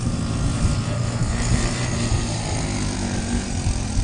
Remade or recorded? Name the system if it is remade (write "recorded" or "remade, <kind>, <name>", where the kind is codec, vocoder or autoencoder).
remade, vocoder, BigVGAN v2